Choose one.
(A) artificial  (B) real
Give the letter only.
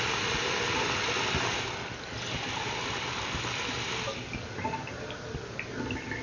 B